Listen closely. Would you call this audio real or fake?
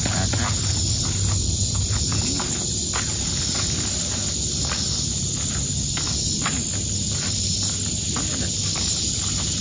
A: real